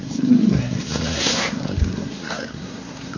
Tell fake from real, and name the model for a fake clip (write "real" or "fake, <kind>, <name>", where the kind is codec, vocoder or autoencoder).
fake, codec, SNAC